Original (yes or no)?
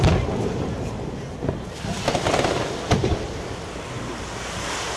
yes